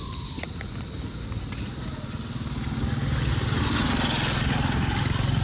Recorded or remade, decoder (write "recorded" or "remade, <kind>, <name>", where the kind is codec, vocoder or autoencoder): recorded